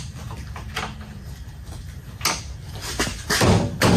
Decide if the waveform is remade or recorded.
recorded